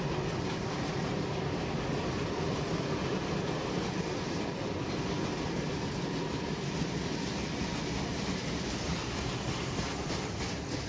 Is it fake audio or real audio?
real